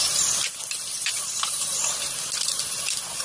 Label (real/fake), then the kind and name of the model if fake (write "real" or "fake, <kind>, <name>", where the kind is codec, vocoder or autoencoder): real